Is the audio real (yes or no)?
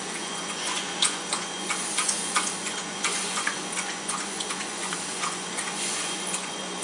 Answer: no